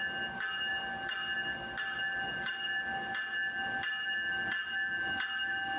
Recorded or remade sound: recorded